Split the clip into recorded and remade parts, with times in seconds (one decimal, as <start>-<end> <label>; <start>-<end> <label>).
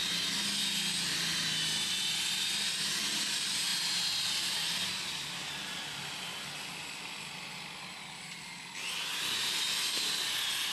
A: 0.0-2.3 recorded; 2.3-6.8 remade; 6.8-10.7 recorded